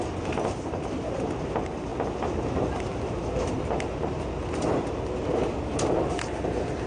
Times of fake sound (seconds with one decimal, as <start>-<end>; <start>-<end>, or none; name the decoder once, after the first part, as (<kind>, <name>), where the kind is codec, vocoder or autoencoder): none